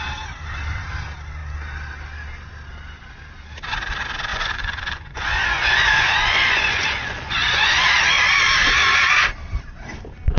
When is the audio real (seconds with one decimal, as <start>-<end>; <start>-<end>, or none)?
0.0-4.3; 7.9-10.4